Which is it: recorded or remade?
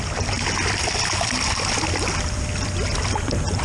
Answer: recorded